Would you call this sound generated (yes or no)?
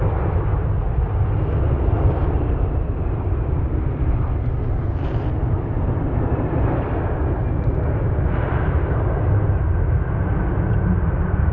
no